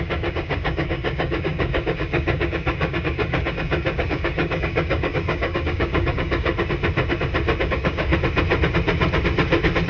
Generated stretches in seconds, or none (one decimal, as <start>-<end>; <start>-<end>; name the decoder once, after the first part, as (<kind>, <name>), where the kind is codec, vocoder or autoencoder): 0.0-6.5 (codec, DAC); 7.6-8.1